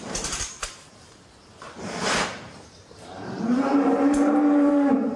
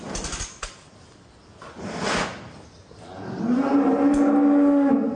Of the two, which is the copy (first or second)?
first